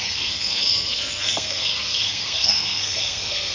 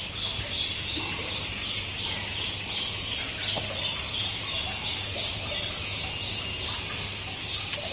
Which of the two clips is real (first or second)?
second